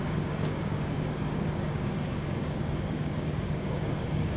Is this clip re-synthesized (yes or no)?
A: yes